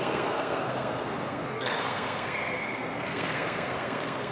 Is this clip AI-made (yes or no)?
yes